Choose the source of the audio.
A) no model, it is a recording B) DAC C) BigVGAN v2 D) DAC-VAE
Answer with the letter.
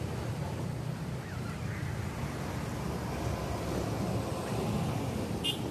A